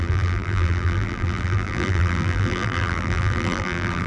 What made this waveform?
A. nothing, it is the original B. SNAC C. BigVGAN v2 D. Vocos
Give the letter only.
C